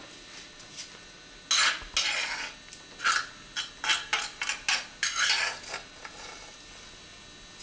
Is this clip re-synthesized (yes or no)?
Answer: no